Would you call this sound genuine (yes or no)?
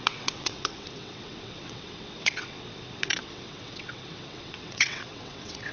no